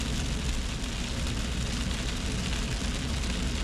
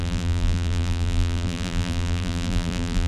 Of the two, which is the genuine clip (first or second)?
first